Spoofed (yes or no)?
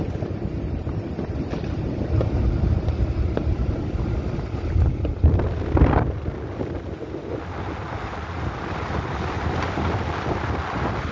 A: no